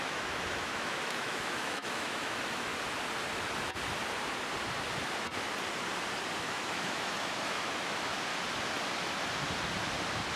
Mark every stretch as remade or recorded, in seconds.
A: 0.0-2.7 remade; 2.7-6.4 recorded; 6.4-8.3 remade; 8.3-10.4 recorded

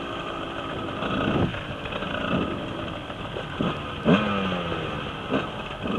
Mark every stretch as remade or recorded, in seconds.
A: 0.0-6.0 recorded

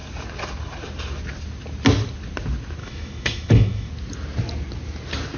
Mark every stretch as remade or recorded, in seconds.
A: 0.0-2.8 recorded; 2.8-3.9 remade; 3.9-5.4 recorded

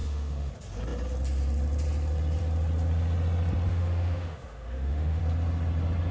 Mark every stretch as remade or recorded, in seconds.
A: 0.0-0.5 remade; 0.5-3.7 recorded; 3.7-5.2 remade; 5.2-6.1 recorded

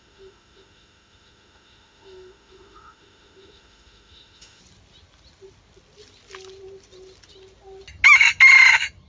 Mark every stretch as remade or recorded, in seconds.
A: 0.0-4.6 remade; 4.6-9.1 recorded